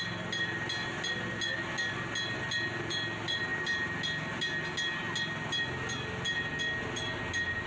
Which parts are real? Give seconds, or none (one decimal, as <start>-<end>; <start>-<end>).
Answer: 0.0-7.7